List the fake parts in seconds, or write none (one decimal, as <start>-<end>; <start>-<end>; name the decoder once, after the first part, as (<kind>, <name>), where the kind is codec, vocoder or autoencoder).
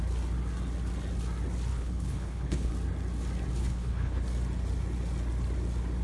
1.7-2.7 (codec, HILCodec); 3.6-4.2